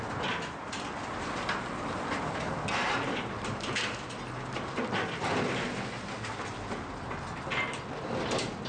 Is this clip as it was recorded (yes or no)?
yes